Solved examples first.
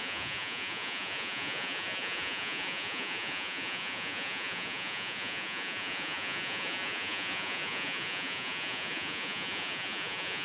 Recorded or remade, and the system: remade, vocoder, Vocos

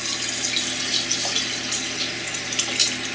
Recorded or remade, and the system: recorded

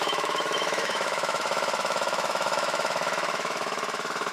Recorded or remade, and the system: remade, autoencoder, DAC-VAE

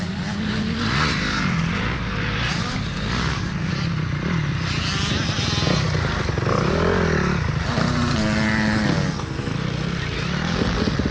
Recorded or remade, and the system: recorded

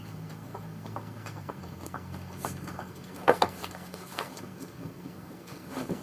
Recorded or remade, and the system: remade, codec, SNAC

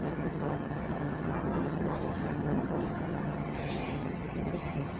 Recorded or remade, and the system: remade, vocoder, HiFi-GAN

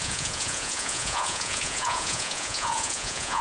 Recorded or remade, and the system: remade, vocoder, Vocos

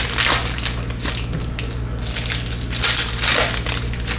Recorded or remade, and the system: recorded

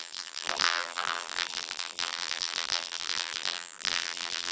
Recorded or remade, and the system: remade, vocoder, BigVGAN v2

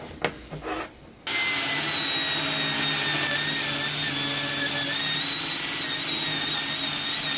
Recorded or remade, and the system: recorded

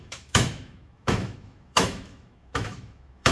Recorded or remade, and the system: remade, autoencoder, DAC-VAE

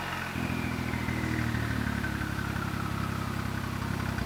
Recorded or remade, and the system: recorded